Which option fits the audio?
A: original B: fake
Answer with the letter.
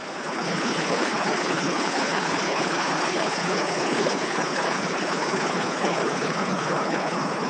B